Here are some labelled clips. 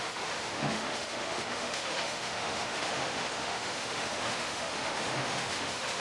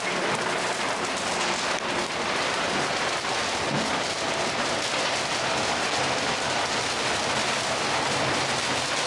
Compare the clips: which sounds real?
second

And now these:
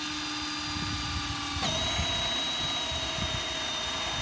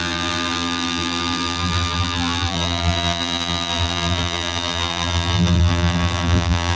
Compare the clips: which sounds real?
first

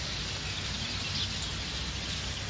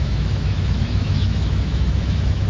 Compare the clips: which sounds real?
first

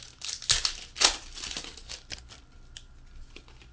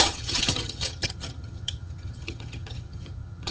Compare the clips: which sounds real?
first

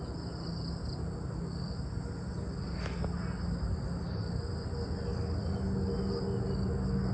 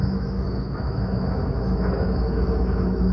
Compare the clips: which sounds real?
first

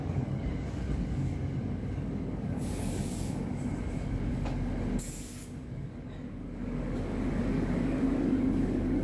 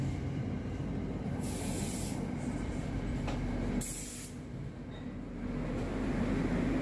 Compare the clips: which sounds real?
second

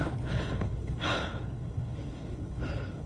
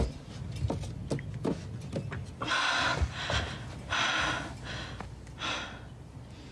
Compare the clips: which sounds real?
second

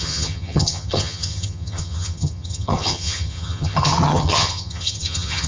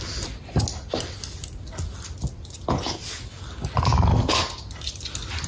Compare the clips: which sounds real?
second